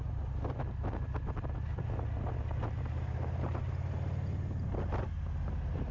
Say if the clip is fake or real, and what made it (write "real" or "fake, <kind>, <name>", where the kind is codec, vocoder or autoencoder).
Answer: real